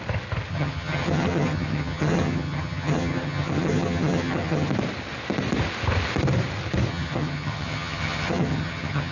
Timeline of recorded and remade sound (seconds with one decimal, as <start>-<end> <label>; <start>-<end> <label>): 0.0-0.5 recorded; 0.5-4.7 remade; 4.7-6.9 recorded; 6.9-9.1 remade